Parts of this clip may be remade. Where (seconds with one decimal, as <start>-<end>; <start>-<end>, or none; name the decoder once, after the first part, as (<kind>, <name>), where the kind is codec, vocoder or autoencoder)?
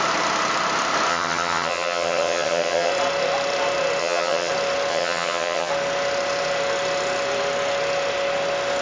1.1-2.9 (vocoder, HiFi-GAN); 4.0-4.5; 4.9-5.7